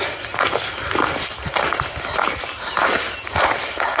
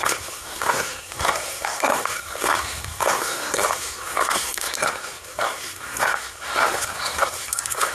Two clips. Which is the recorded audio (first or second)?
first